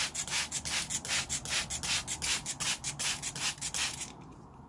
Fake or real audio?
real